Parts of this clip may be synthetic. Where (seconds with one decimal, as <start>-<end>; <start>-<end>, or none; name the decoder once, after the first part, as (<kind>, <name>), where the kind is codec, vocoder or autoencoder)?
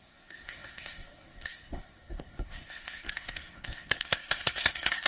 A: 0.0-5.1 (codec, SNAC)